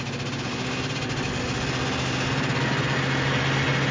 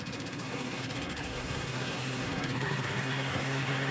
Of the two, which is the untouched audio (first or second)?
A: first